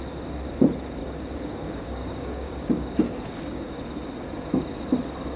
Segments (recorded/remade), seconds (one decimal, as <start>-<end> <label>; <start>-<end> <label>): 0.0-1.0 recorded; 1.0-3.7 remade; 3.7-5.4 recorded